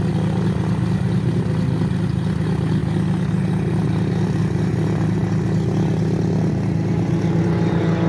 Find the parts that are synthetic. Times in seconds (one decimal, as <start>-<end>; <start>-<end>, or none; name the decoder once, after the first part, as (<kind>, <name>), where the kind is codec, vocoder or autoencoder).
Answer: none